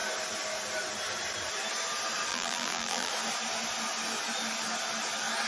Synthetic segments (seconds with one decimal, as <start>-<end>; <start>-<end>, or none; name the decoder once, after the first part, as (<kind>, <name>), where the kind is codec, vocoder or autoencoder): 2.3-3.1 (vocoder, BigVGAN v2)